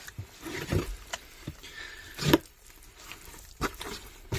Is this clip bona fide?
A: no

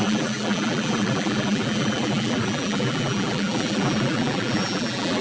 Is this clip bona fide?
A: no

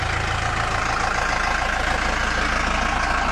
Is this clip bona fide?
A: yes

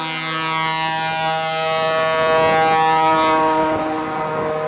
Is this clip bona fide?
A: yes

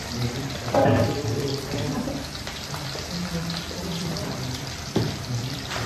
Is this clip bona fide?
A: no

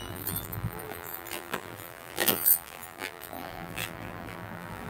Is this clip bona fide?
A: no